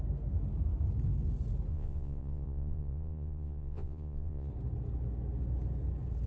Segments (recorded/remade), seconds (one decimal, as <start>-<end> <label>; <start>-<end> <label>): 0.0-1.7 recorded; 1.7-4.5 remade; 4.5-6.3 recorded